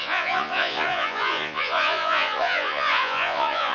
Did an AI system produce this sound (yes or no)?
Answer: yes